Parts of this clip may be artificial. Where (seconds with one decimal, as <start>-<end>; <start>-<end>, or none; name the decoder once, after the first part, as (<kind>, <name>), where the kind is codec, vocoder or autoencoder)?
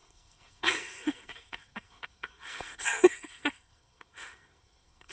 0.0-5.1 (codec, SNAC)